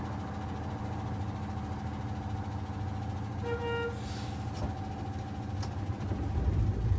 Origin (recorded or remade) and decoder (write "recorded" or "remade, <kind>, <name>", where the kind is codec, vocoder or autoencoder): recorded